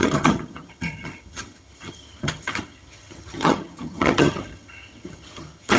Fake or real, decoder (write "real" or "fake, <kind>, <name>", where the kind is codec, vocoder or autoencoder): fake, vocoder, HiFi-GAN